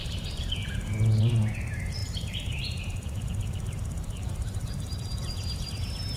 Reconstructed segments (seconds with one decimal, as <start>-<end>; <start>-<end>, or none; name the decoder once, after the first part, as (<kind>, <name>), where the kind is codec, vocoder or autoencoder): 0.0-1.2 (vocoder, BigVGAN v2); 2.0-5.7